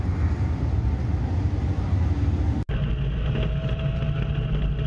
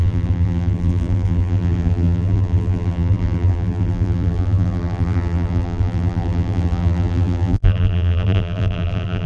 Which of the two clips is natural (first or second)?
first